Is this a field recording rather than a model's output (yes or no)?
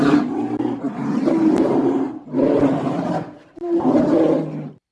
no